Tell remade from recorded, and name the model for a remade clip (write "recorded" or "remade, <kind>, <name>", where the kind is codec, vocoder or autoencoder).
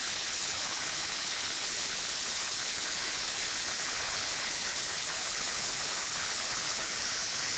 remade, codec, HILCodec